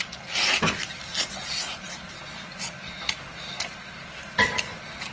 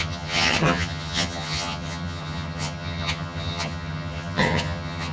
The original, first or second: first